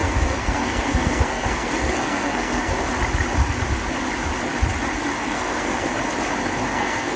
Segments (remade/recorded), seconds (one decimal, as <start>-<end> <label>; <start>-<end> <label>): 0.0-2.7 remade; 2.7-5.2 recorded; 5.2-5.9 remade; 5.9-6.7 recorded; 6.7-7.2 remade